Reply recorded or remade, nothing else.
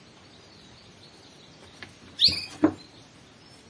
recorded